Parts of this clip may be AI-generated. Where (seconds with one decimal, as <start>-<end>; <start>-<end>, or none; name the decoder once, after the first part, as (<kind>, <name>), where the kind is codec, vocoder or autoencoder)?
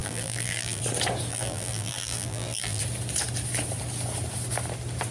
0.0-0.8 (vocoder, BigVGAN v2); 1.3-2.8